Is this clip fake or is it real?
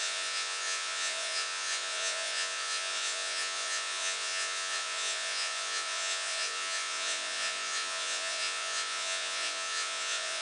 fake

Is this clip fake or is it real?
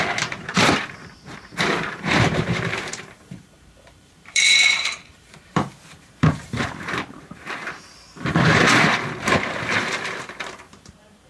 fake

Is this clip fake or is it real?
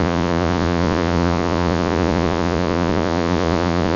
fake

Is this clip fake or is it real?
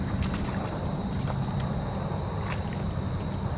real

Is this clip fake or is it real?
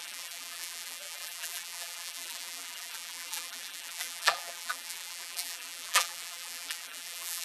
fake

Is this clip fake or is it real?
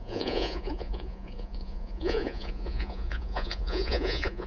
fake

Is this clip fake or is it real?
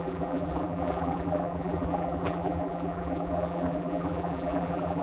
fake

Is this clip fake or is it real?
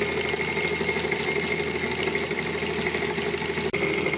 real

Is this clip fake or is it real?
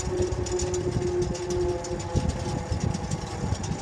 real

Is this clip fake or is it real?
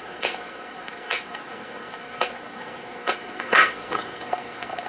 fake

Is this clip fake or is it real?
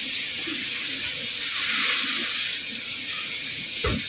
fake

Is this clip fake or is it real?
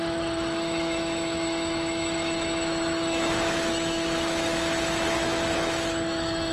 fake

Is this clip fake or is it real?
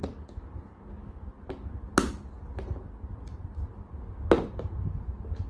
real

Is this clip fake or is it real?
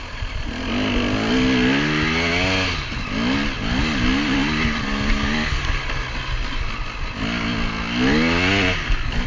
real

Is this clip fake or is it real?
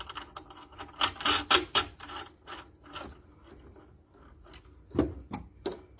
real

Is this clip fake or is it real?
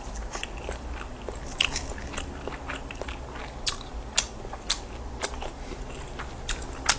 real